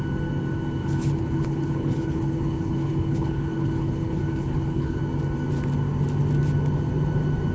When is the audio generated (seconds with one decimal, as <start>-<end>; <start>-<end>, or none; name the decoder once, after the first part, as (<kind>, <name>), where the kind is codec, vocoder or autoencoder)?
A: 0.8-5.0 (codec, HILCodec)